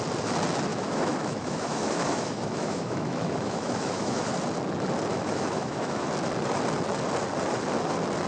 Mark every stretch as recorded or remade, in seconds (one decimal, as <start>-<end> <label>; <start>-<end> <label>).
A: 0.0-0.7 recorded; 0.7-4.2 remade; 4.2-5.1 recorded; 5.1-6.1 remade; 6.1-8.3 recorded